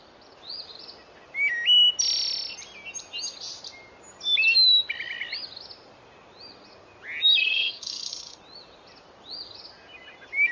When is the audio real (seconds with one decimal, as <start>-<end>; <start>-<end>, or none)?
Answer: 0.0-7.4; 8.4-10.5